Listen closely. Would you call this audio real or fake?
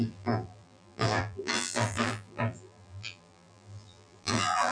fake